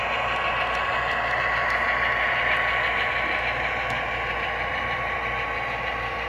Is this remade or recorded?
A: recorded